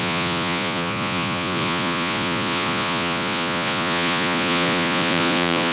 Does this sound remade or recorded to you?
remade